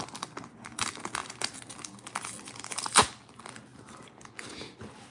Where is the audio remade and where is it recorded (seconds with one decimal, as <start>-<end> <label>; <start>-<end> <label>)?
0.0-5.1 remade